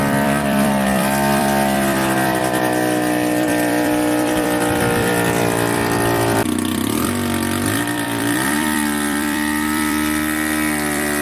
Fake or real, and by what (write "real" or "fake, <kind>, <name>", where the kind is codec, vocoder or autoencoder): fake, vocoder, BigVGAN v2